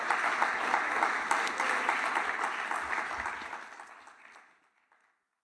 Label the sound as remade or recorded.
recorded